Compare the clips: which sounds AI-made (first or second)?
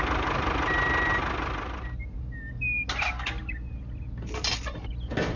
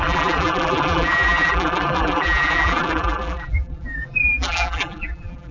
second